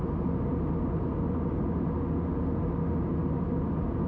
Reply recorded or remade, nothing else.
recorded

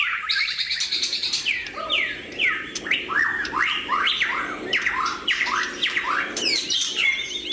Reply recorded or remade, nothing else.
remade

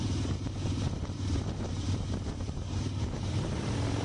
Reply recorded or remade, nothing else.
remade